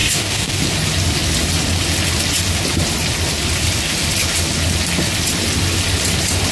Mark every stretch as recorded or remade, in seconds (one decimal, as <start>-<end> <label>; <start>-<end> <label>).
0.0-0.6 remade; 0.6-6.5 recorded